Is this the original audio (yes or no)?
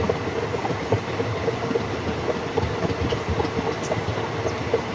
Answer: yes